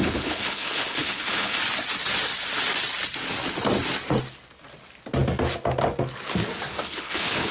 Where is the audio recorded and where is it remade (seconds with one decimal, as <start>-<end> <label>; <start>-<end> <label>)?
0.0-1.6 remade; 1.6-6.8 recorded; 6.8-7.5 remade